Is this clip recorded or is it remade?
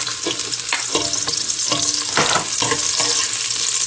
recorded